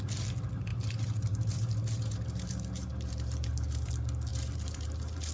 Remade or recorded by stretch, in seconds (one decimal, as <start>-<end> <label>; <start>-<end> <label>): 0.0-0.7 recorded; 0.7-3.9 remade; 3.9-4.3 recorded; 4.3-5.3 remade